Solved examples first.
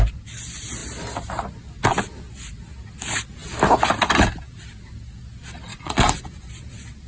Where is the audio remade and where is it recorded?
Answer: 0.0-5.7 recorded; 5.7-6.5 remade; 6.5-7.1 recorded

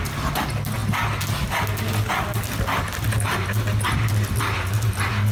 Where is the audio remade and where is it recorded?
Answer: 0.0-5.3 recorded

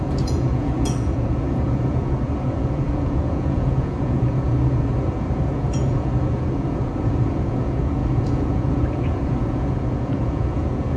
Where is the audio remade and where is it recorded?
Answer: 0.0-11.0 remade

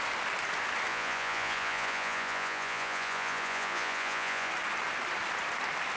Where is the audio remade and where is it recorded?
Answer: 0.0-0.9 recorded; 0.9-4.5 remade; 4.5-6.0 recorded

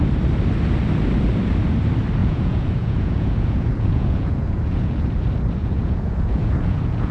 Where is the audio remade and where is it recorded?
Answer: 0.0-2.2 recorded; 2.2-5.1 remade; 5.1-5.6 recorded; 5.6-7.1 remade